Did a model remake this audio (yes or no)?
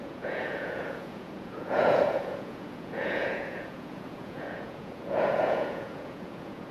yes